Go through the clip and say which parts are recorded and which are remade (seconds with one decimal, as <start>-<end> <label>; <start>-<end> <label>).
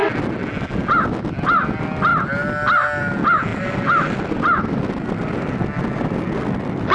0.0-6.9 recorded